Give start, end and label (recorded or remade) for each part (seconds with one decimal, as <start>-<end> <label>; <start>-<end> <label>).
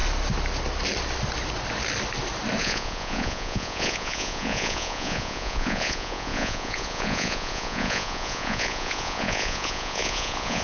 0.0-2.6 recorded; 2.6-10.6 remade